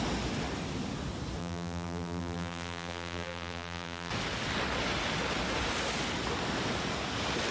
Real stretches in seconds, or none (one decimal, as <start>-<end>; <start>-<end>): 0.0-1.4; 4.1-7.5